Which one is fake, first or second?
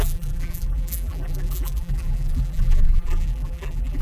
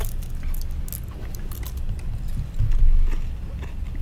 first